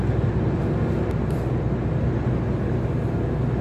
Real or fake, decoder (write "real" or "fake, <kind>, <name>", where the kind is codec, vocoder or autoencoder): real